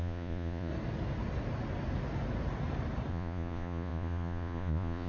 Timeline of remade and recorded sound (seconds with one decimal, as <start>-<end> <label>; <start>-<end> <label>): 0.0-0.7 remade; 0.7-3.1 recorded; 3.1-5.1 remade